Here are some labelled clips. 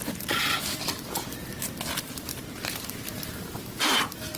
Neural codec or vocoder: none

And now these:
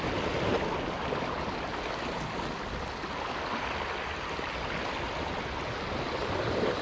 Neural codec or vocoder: none